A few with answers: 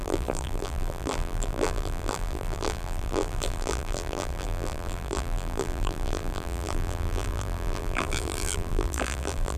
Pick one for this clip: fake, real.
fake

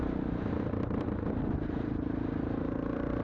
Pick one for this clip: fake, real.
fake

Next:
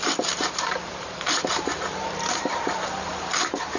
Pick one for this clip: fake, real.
fake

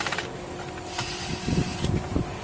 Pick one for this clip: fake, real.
fake